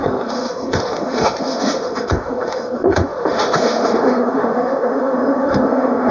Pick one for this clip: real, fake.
fake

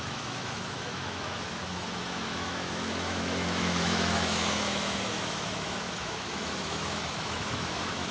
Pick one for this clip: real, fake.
fake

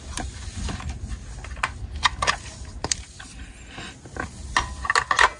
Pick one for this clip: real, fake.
real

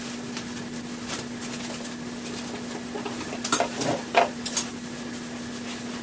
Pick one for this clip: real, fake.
real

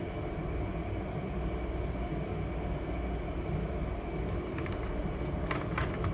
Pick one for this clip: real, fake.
real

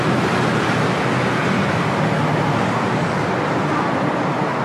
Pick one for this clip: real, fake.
real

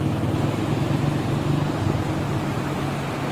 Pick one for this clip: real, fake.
real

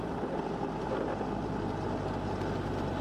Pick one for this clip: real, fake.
real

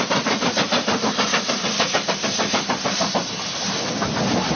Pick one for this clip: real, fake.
real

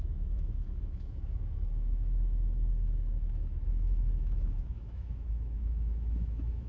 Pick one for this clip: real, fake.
fake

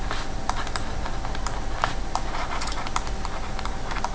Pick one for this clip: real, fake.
real